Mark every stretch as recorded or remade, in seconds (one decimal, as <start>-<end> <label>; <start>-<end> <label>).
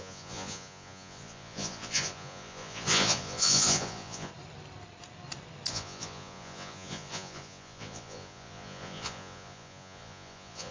0.0-4.3 remade; 4.3-5.7 recorded; 5.7-10.7 remade